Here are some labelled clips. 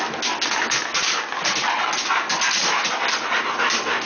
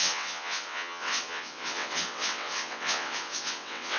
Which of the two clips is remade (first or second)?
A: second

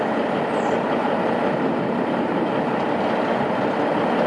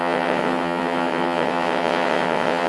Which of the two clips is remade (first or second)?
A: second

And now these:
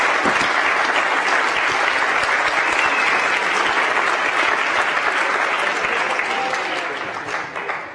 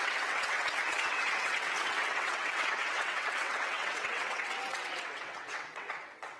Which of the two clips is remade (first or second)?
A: second